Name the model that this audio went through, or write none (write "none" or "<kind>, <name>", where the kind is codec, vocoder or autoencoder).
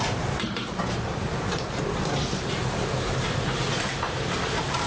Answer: vocoder, BigVGAN v2